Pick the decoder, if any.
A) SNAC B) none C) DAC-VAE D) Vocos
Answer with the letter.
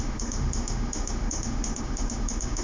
C